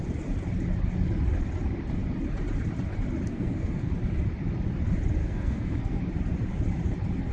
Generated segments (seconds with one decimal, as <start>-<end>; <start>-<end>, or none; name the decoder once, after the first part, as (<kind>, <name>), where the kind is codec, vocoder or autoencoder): 3.3-3.9 (codec, SNAC); 5.2-6.0